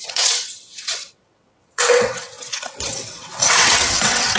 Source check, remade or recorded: remade